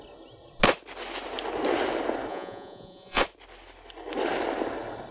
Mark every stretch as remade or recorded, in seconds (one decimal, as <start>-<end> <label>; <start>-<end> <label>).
0.0-2.3 recorded; 2.3-3.2 remade; 3.2-5.1 recorded